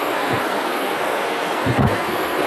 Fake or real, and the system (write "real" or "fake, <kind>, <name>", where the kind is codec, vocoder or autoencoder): fake, codec, SNAC